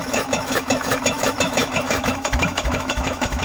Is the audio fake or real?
fake